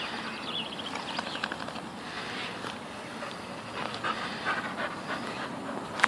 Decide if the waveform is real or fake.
real